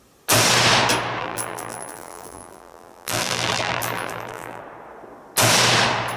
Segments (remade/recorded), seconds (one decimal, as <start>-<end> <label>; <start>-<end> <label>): 0.0-1.2 recorded; 1.2-4.6 remade; 4.6-6.2 recorded